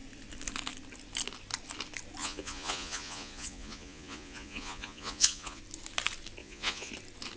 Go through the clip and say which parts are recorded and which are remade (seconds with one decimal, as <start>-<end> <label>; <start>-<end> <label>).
0.0-2.2 recorded; 2.2-5.6 remade; 5.6-6.4 recorded; 6.4-6.9 remade; 6.9-7.4 recorded